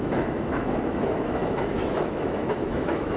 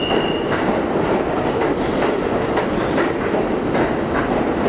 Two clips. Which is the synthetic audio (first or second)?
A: first